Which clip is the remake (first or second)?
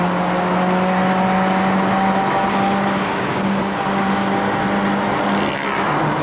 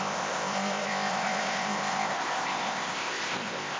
second